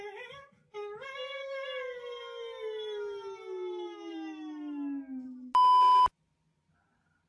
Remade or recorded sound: recorded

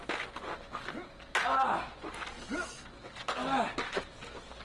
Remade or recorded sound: recorded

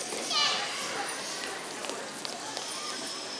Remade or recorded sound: recorded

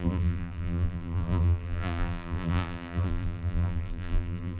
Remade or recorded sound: remade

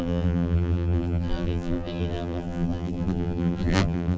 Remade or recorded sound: remade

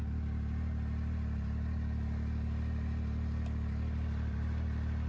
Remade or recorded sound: recorded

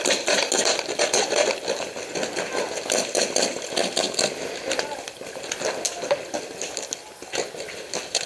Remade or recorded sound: recorded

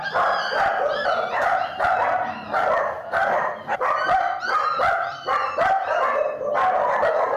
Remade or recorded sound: recorded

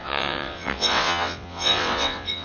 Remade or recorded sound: remade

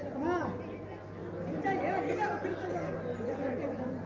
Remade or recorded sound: recorded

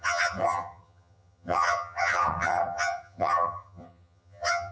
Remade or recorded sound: remade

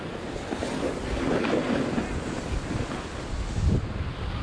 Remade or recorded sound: recorded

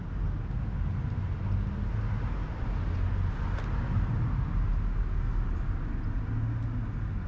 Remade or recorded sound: recorded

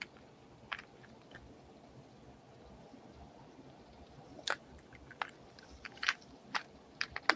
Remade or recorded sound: recorded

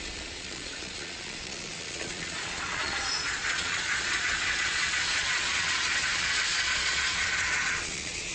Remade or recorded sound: remade